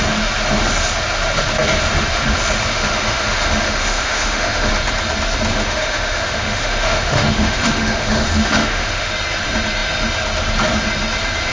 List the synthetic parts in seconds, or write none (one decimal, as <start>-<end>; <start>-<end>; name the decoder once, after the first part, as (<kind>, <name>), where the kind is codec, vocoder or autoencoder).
2.7-4.7 (autoencoder, DAC-VAE); 5.5-9.1